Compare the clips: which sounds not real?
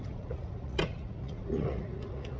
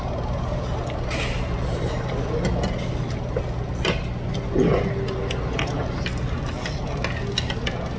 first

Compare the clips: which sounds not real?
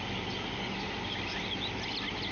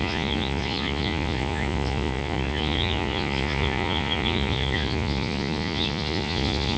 second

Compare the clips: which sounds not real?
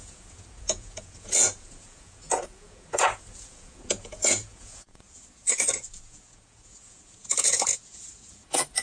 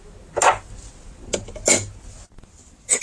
first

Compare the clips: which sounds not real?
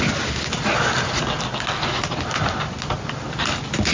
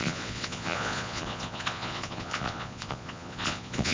second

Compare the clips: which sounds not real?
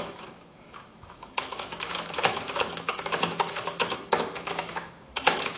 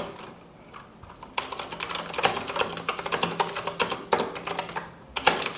first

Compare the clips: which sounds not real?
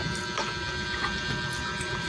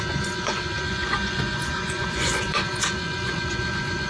second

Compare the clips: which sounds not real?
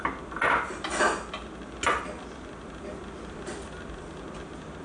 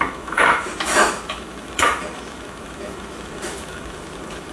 second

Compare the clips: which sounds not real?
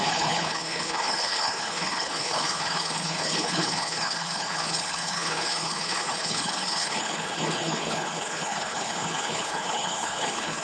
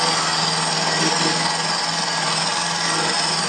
first